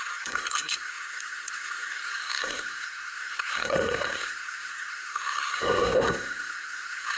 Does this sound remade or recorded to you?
remade